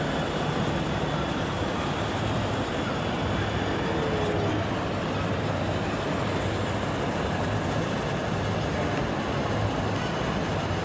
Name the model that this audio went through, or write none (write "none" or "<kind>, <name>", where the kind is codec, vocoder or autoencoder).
none